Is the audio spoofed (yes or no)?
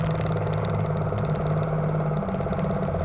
no